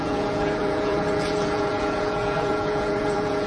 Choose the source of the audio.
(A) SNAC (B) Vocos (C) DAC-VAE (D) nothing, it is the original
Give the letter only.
B